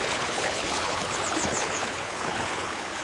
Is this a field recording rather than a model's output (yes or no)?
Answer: no